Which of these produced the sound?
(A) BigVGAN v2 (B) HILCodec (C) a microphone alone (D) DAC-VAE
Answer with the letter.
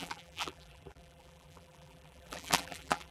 A